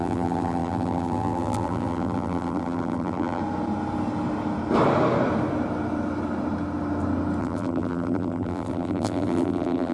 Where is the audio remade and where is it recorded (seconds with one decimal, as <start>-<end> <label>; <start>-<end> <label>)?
0.0-3.4 remade; 3.4-7.4 recorded; 7.4-9.9 remade

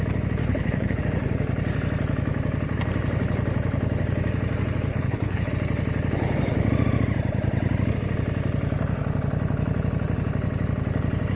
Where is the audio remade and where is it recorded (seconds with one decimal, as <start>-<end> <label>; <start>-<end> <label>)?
0.0-0.4 recorded; 0.4-1.0 remade; 1.0-4.9 recorded; 4.9-5.5 remade; 5.5-11.4 recorded

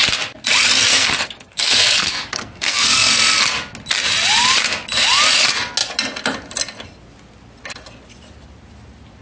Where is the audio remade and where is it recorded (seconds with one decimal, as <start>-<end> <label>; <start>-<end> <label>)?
0.0-0.9 recorded; 0.9-3.1 remade; 3.1-9.2 recorded

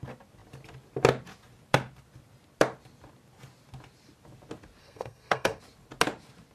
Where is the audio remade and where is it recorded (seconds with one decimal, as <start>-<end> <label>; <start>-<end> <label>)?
0.0-4.8 recorded; 4.8-5.6 remade; 5.6-6.5 recorded